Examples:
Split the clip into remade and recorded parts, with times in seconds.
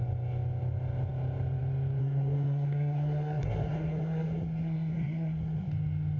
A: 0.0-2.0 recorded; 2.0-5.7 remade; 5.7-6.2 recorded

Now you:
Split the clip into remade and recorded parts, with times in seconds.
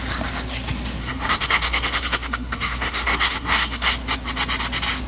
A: 0.0-1.0 recorded; 1.0-3.9 remade; 3.9-5.1 recorded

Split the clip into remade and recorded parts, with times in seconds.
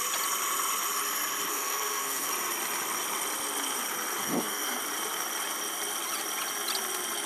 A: 0.0-1.5 recorded; 1.5-2.3 remade; 2.3-4.2 recorded; 4.2-4.8 remade; 4.8-7.3 recorded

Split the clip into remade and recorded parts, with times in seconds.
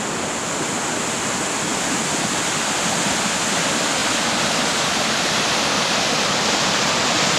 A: 0.0-7.4 recorded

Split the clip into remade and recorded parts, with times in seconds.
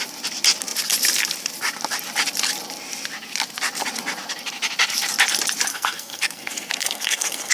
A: 0.0-5.7 recorded; 5.7-7.5 remade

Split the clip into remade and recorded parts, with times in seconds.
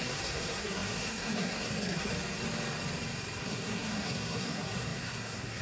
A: 0.0-2.1 remade; 2.1-3.4 recorded; 3.4-5.6 remade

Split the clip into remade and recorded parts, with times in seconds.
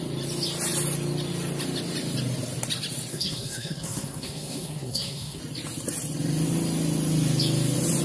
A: 0.0-3.1 recorded; 3.1-5.4 remade; 5.4-8.0 recorded